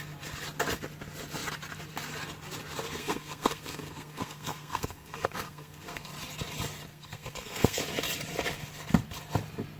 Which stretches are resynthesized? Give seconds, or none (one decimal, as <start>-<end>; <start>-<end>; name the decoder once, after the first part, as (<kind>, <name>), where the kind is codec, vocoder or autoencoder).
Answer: 3.0-6.1 (codec, SNAC); 6.9-7.8